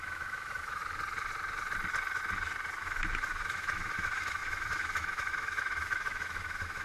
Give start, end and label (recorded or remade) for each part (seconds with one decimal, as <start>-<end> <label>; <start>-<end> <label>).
0.0-0.8 remade; 0.8-2.8 recorded; 2.8-6.8 remade